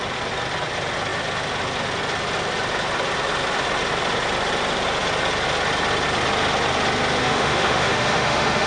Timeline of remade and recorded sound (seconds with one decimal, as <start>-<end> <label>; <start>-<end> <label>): 0.0-7.2 recorded; 7.2-8.7 remade